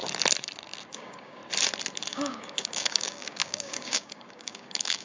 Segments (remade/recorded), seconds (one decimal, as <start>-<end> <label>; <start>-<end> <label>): 0.0-0.9 recorded; 0.9-1.4 remade; 1.4-2.1 recorded; 2.1-5.0 remade

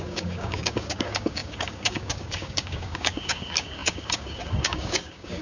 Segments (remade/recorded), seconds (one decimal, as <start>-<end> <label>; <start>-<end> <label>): 0.0-5.4 remade

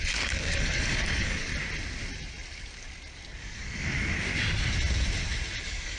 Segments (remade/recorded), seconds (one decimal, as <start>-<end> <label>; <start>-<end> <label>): 0.0-1.5 remade; 1.5-3.4 recorded; 3.4-4.1 remade; 4.1-5.6 recorded; 5.6-6.0 remade

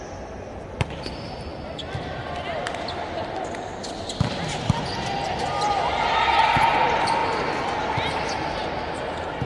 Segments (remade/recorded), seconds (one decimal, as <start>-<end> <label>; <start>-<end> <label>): 0.0-9.5 recorded

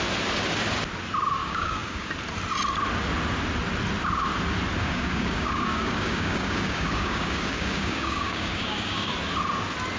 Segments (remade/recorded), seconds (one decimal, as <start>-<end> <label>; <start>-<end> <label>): 0.0-1.4 recorded; 1.4-2.1 remade; 2.1-4.8 recorded; 4.8-9.1 remade; 9.1-10.0 recorded